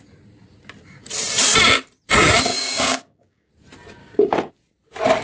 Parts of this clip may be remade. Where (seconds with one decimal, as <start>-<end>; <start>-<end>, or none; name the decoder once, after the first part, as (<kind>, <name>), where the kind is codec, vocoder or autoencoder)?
2.5-3.5 (codec, DAC); 4.0-4.5